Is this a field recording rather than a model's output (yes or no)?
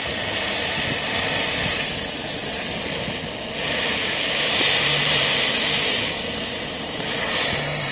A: yes